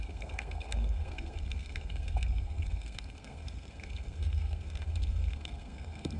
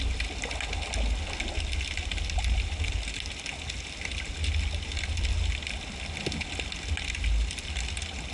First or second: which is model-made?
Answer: first